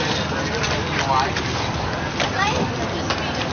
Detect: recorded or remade recorded